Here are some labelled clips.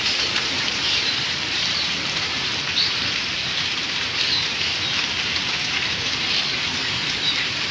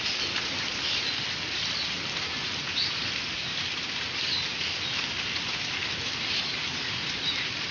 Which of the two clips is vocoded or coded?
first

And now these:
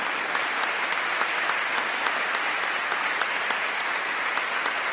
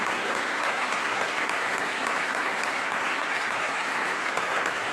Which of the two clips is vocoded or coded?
second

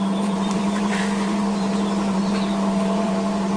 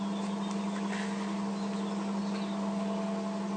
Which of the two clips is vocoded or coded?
first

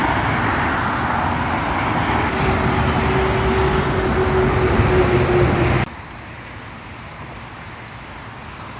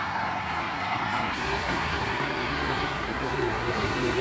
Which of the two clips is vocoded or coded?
second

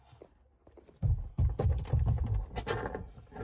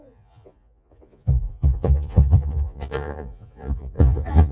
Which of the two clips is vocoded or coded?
second